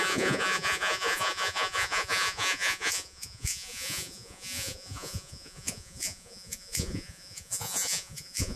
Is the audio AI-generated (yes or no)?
yes